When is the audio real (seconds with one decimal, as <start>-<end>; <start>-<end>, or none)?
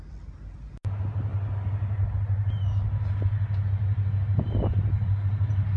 0.0-5.8